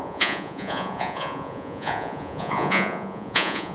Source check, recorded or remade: remade